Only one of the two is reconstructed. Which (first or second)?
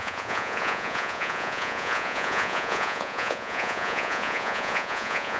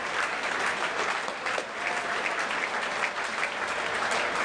first